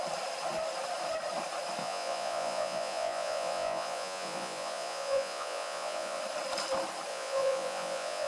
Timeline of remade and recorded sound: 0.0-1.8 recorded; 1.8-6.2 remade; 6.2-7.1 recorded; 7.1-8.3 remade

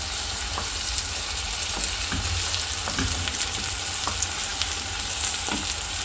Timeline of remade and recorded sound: 0.0-6.0 recorded

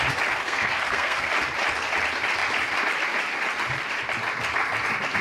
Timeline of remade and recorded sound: 0.0-0.4 recorded; 0.4-1.3 remade; 1.3-5.2 recorded

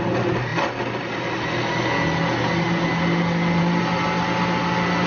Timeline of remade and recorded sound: 0.0-5.1 recorded

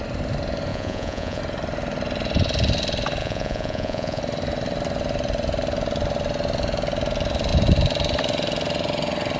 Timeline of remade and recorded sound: 0.0-0.7 recorded; 0.7-1.4 remade; 1.4-3.2 recorded; 3.2-4.2 remade; 4.2-9.4 recorded

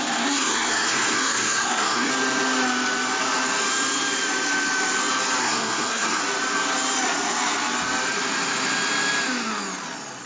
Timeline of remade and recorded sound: 0.0-2.1 remade; 2.1-5.4 recorded; 5.4-6.2 remade; 6.2-10.3 recorded

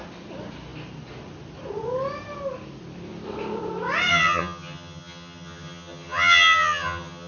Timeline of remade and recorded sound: 0.0-4.1 recorded; 4.1-7.3 remade

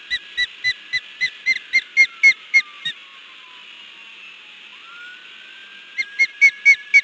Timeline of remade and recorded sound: 0.0-7.0 recorded